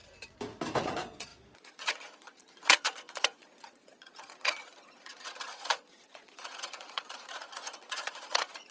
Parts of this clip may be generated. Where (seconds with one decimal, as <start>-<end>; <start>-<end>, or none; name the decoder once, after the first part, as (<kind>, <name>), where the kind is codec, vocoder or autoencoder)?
0.8-8.7 (vocoder, Vocos)

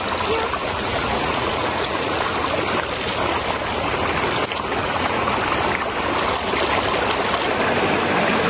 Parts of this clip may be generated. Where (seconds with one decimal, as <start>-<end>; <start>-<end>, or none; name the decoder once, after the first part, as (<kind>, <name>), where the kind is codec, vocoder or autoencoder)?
0.6-2.3 (vocoder, Vocos); 4.8-5.4

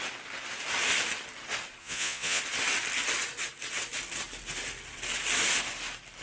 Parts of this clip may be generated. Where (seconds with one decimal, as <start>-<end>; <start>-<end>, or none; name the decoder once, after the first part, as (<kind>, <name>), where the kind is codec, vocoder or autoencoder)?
1.8-2.4 (vocoder, Vocos)

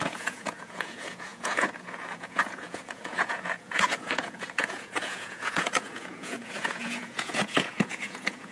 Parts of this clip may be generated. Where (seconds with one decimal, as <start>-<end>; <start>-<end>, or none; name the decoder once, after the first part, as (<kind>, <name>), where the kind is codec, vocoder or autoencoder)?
0.0-8.5 (vocoder, Vocos)

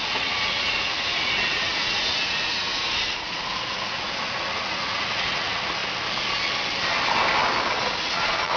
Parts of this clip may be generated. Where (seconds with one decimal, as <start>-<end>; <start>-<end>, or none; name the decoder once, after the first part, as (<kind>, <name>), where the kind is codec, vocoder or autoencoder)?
0.0-5.8 (vocoder, Vocos); 8.0-8.6